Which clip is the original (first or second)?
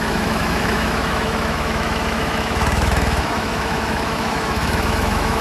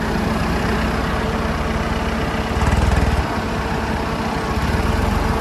second